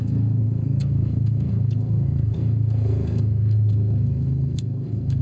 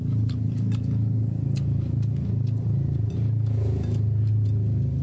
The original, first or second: second